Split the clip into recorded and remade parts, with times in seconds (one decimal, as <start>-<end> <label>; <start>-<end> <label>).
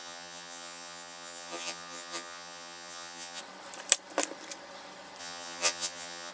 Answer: 0.0-3.4 remade; 3.4-5.2 recorded; 5.2-6.3 remade